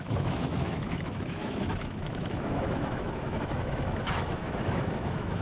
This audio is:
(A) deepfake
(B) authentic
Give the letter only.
A